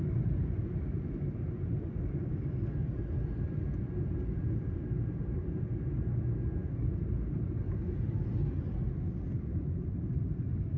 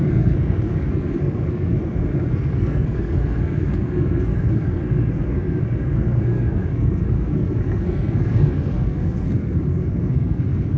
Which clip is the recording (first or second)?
first